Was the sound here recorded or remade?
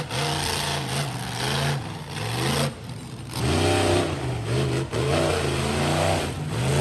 recorded